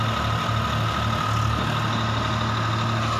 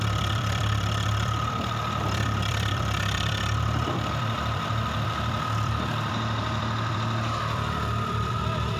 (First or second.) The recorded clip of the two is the first